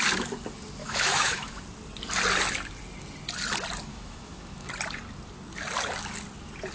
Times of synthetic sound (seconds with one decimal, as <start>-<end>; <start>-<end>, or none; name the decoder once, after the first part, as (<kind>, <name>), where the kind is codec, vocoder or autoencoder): 0.8-1.6 (autoencoder, DAC-VAE); 3.9-4.7

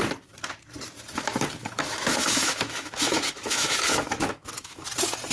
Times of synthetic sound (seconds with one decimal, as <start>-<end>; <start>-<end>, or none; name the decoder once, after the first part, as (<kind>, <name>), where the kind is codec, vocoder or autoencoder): 1.6-4.8 (autoencoder, DAC-VAE)

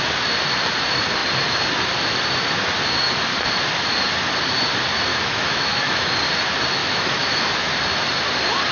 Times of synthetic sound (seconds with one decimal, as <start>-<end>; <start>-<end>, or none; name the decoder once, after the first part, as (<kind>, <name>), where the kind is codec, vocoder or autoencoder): 5.1-6.1 (autoencoder, DAC-VAE); 6.8-7.7